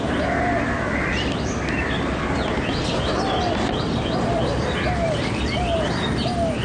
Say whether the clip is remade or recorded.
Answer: recorded